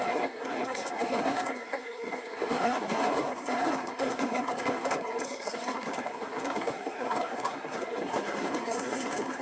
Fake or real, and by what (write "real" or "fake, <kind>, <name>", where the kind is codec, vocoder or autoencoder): fake, codec, SNAC